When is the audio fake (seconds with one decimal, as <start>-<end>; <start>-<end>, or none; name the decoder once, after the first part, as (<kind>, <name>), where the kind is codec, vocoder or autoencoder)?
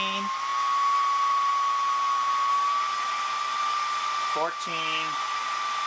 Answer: none